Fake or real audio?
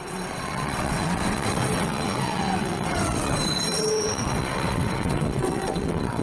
fake